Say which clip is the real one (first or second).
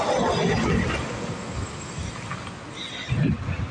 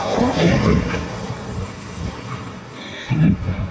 first